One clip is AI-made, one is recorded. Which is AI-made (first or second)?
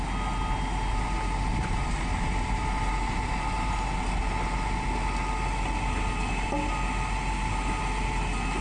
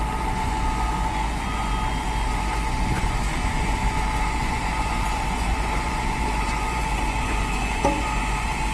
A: second